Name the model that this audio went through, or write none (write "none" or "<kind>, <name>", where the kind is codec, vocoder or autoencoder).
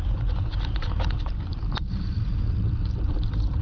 vocoder, BigVGAN v2